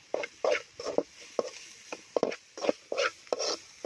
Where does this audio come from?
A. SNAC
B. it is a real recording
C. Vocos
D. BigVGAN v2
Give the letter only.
B